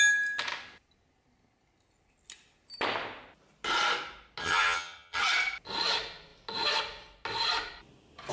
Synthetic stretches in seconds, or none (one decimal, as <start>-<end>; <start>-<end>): 4.4-5.2